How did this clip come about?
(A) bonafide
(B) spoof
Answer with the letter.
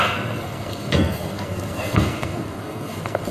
B